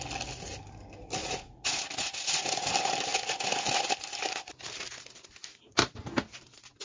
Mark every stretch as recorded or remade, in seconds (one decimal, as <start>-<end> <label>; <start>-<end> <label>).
0.0-1.2 recorded; 1.2-2.7 remade; 2.7-6.8 recorded